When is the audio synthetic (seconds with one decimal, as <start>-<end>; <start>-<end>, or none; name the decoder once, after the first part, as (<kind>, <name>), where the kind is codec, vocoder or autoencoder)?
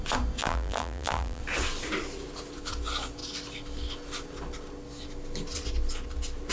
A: 0.4-1.4 (vocoder, BigVGAN v2)